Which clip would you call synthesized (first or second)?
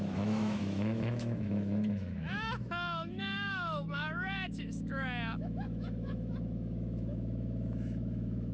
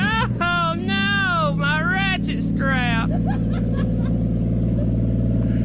first